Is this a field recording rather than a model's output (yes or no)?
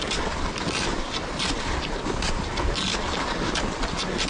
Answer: yes